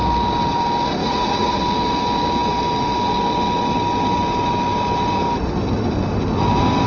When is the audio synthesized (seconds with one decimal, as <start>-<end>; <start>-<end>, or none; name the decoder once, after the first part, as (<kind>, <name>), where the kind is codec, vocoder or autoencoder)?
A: 1.0-1.6 (vocoder, Vocos)